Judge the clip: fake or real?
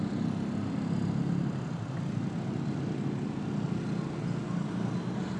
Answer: real